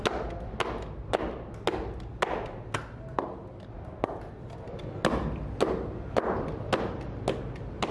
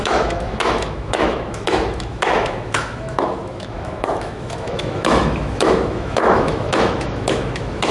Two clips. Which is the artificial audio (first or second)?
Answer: second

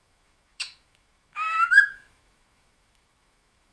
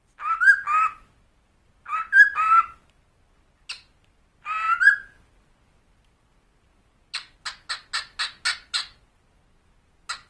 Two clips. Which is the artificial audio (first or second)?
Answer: first